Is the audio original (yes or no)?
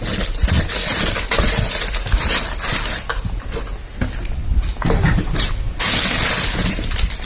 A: yes